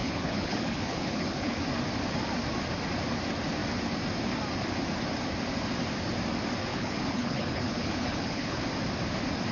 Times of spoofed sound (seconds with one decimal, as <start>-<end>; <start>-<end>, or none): 0.0-1.6; 6.7-8.6